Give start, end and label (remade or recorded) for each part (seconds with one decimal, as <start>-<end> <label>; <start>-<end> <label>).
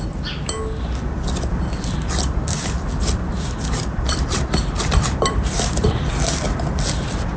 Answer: 0.0-1.5 recorded; 1.5-5.9 remade; 5.9-7.4 recorded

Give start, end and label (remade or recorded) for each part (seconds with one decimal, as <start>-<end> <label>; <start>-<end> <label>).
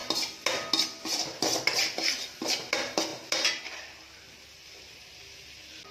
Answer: 0.0-5.9 recorded